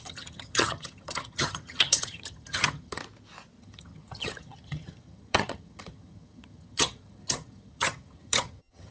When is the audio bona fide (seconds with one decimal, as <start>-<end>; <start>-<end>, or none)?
3.0-3.6

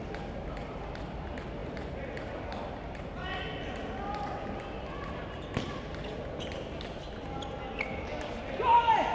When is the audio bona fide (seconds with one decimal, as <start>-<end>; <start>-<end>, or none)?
0.0-9.1

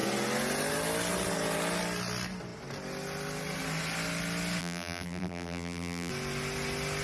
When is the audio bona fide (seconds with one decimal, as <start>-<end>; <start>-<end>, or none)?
0.0-4.6; 6.1-7.0

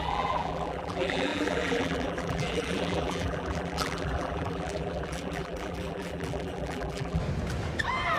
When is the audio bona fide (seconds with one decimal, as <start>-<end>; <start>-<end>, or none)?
7.2-8.2